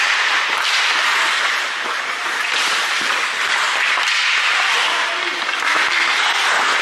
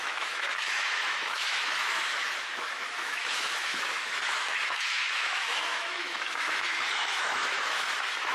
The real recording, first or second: first